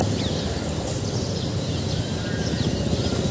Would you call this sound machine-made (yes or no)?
no